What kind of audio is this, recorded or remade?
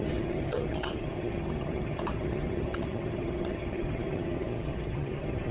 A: remade